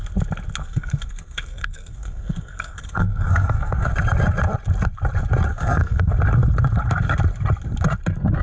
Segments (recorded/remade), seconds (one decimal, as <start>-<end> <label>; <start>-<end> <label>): 0.0-0.6 recorded; 0.6-3.9 remade; 3.9-5.5 recorded; 5.5-6.1 remade; 6.1-8.4 recorded